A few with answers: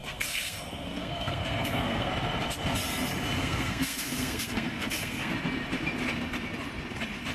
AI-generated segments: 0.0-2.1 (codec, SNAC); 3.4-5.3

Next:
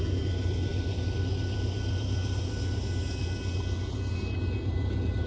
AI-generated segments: none

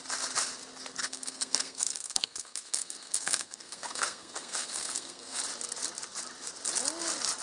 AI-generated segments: 1.0-5.4 (codec, SNAC)